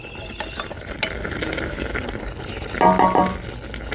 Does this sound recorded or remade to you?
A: recorded